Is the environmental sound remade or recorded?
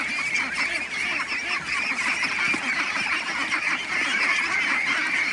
recorded